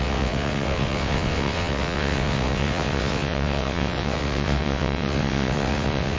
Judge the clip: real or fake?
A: fake